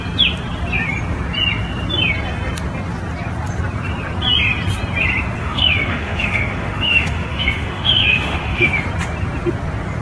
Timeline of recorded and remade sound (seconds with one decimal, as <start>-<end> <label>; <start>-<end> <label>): 0.0-5.4 recorded; 5.4-8.7 remade; 8.7-10.0 recorded